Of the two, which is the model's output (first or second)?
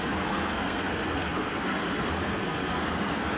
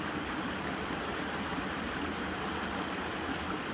first